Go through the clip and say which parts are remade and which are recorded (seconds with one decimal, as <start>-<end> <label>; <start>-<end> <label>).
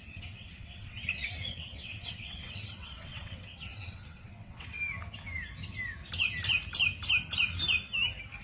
0.0-4.8 remade; 4.8-8.4 recorded